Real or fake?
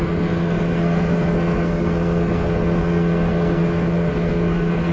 fake